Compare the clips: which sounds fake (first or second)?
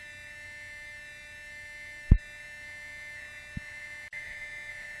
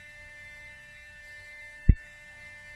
second